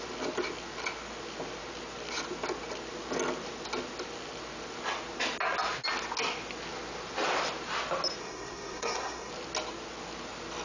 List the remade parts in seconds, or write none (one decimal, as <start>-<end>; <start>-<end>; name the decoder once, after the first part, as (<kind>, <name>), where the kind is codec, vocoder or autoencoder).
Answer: 8.2-9.3 (codec, SNAC)